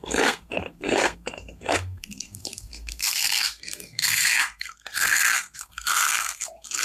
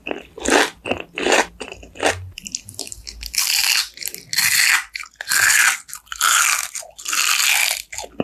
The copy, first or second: first